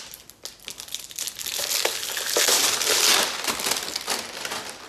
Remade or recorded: recorded